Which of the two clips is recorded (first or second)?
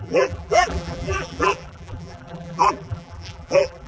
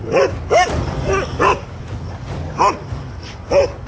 second